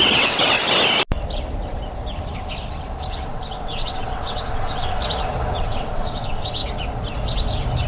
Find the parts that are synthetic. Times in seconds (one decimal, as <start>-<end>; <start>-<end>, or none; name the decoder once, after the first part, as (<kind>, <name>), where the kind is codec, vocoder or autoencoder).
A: 0.0-0.6 (vocoder, WaveNeXt); 3.3-5.0; 5.6-6.6